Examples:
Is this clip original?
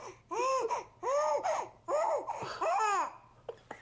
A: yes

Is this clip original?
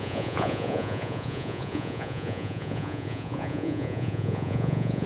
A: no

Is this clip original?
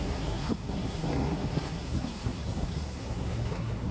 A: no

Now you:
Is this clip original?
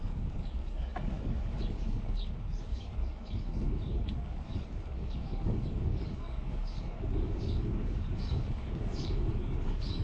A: no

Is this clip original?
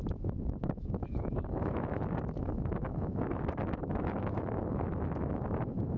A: no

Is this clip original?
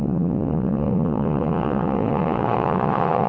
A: no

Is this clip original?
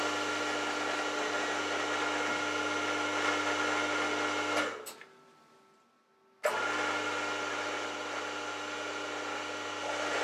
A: yes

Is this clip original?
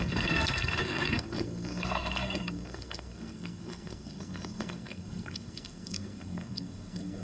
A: no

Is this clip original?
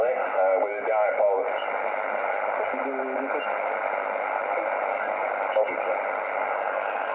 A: yes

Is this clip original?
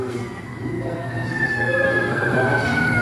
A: no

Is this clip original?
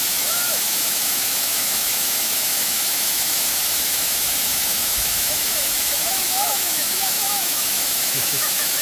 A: no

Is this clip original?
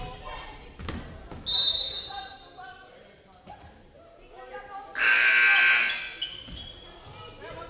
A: yes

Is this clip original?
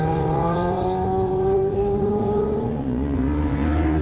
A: no